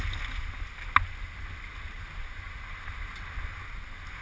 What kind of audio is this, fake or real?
real